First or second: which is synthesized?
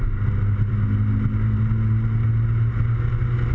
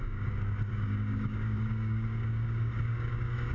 second